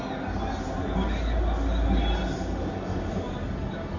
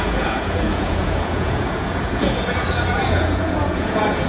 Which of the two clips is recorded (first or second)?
first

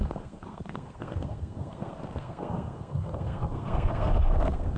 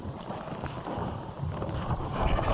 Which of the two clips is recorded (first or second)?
second